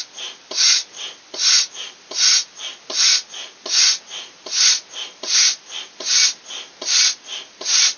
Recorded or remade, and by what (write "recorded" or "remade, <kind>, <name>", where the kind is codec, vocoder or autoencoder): recorded